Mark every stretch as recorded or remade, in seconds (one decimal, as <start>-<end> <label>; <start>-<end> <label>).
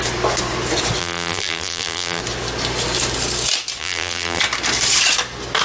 0.0-1.0 recorded; 1.0-2.2 remade; 2.2-3.8 recorded; 3.8-4.4 remade; 4.4-5.6 recorded